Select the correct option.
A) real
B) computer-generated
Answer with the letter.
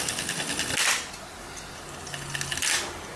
A